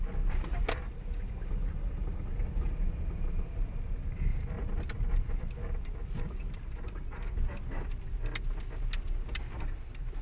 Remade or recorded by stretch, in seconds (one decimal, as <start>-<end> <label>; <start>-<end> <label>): 0.0-10.2 recorded